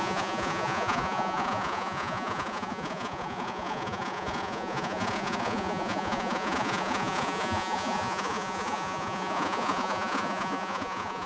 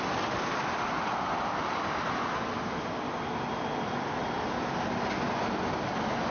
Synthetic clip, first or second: first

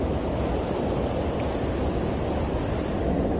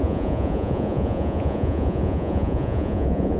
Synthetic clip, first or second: second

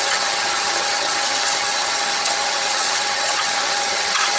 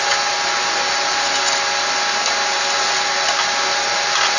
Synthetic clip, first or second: first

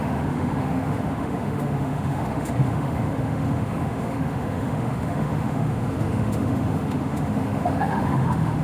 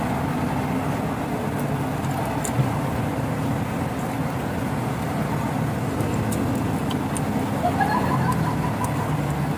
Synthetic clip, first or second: first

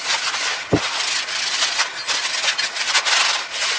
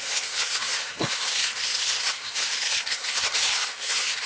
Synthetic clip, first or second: second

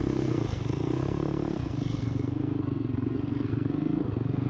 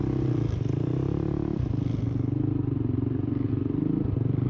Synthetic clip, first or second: first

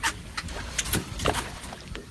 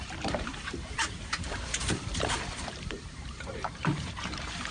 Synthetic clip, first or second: second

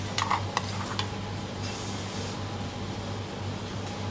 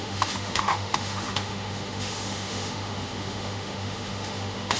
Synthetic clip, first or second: second